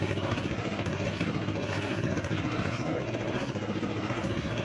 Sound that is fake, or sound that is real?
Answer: fake